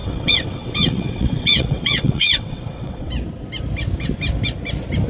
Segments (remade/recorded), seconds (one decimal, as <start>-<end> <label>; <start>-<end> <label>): 0.0-3.1 remade; 3.1-5.1 recorded